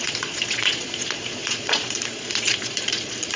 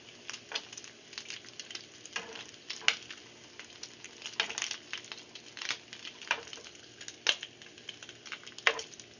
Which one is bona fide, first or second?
second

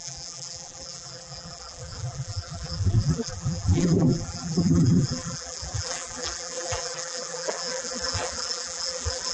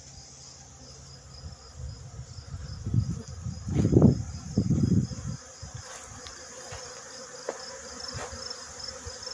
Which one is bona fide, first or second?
second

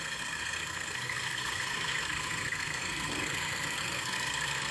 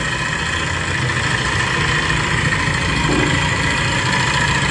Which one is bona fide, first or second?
second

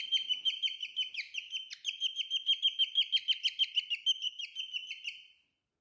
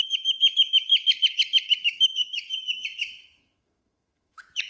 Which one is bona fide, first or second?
first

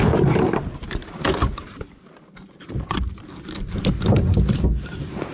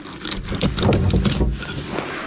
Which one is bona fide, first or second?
second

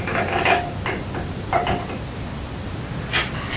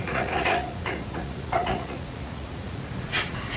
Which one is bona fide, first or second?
first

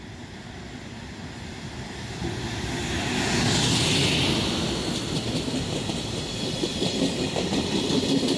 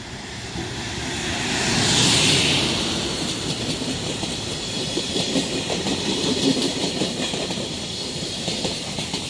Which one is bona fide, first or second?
first